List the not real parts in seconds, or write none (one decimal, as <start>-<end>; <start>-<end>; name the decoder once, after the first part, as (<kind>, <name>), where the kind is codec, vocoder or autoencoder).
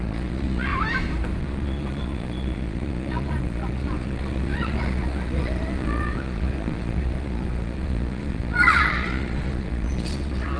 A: 0.0-0.7 (vocoder, Vocos); 1.4-10.6